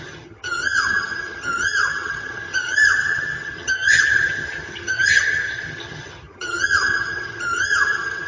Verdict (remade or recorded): remade